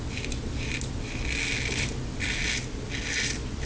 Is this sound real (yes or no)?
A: yes